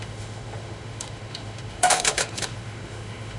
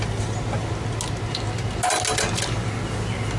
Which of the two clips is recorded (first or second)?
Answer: second